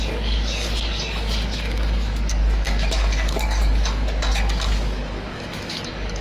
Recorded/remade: remade